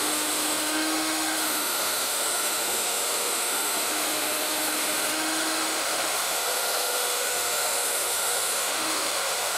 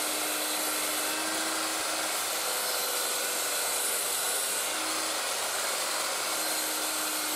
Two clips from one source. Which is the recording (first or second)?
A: second